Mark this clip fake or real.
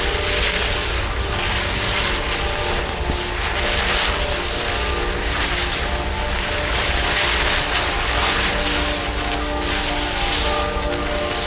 real